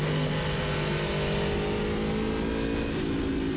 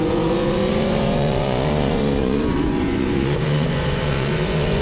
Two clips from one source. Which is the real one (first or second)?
first